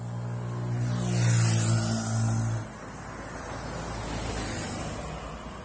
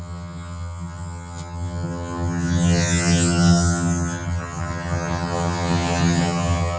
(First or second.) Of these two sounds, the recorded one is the first